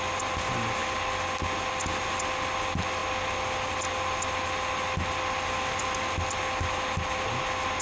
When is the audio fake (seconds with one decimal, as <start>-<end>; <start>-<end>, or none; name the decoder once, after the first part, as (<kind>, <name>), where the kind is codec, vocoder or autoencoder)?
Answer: none

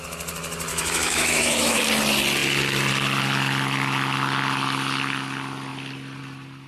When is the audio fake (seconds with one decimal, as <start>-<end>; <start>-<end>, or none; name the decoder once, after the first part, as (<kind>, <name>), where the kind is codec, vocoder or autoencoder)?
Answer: 0.7-1.8 (autoencoder, DAC-VAE)